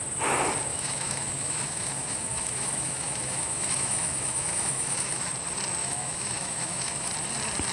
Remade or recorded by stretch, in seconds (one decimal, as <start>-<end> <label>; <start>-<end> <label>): 0.0-0.7 recorded; 0.7-5.3 remade; 5.3-5.8 recorded; 5.8-7.1 remade; 7.1-7.7 recorded